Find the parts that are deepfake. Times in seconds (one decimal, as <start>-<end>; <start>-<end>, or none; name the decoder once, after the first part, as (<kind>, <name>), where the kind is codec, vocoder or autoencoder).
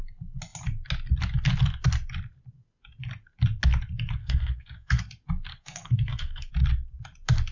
4.2-5.0 (codec, SNAC); 5.5-6.5